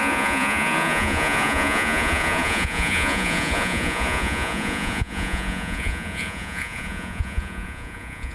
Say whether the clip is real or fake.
fake